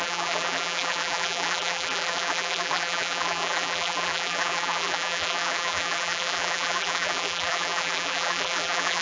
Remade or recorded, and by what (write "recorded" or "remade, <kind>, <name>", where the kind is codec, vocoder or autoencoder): remade, vocoder, BigVGAN v2